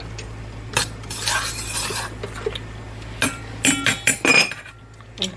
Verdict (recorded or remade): remade